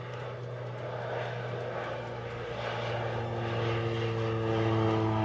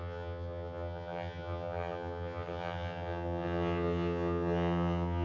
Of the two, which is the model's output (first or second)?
second